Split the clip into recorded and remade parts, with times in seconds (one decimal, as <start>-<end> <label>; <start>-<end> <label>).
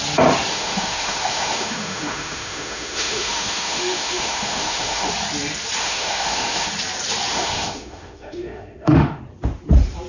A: 0.0-0.5 recorded; 0.5-5.1 remade; 5.1-5.8 recorded; 5.8-6.7 remade; 6.7-7.3 recorded; 7.3-9.2 remade; 9.2-10.1 recorded